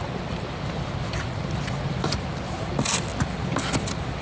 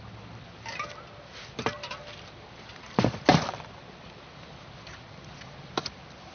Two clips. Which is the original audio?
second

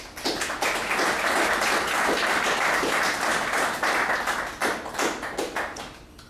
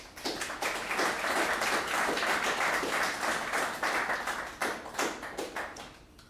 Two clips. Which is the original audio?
first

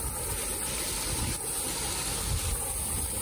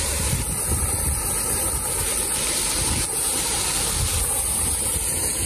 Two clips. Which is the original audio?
first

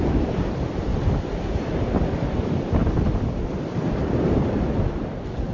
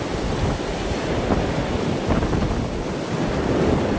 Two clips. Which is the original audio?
second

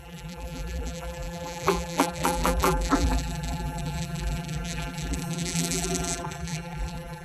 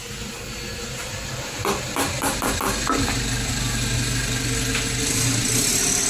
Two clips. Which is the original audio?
second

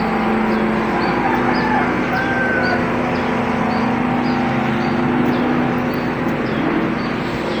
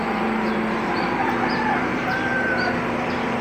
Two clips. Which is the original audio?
first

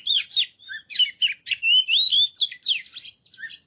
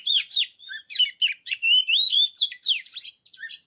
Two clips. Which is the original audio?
first